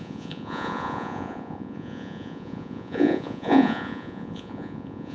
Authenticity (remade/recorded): remade